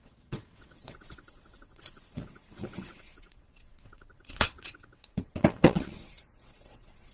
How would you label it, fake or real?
fake